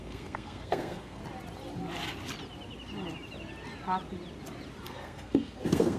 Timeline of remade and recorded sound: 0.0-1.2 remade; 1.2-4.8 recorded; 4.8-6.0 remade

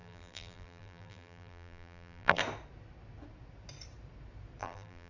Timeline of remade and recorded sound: 0.0-2.4 remade; 2.4-4.6 recorded; 4.6-5.1 remade

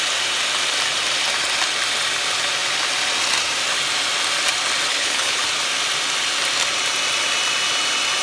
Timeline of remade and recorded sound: 0.0-4.9 recorded; 4.9-5.4 remade; 5.4-8.2 recorded

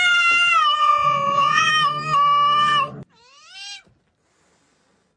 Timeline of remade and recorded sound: 0.0-0.8 recorded; 0.8-1.7 remade; 1.7-5.2 recorded

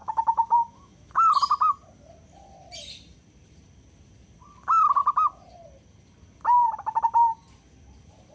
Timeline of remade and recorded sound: 0.0-1.3 remade; 1.3-8.3 recorded

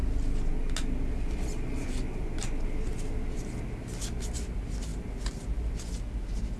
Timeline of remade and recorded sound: 0.0-6.6 recorded

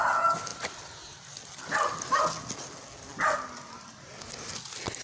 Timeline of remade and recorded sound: 0.0-5.0 recorded